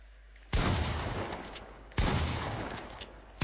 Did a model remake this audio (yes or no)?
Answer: yes